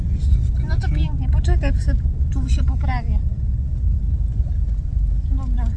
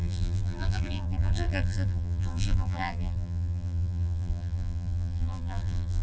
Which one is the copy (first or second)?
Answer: second